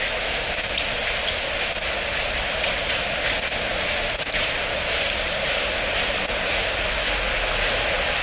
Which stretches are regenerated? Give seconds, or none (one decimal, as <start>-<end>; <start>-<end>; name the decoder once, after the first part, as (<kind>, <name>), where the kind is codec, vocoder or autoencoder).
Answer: none